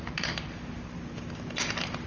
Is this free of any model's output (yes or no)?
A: yes